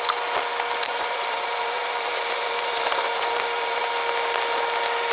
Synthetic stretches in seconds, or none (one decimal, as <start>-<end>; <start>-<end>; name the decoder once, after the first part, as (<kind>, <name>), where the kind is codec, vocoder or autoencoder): 0.8-3.9 (vocoder, BigVGAN v2)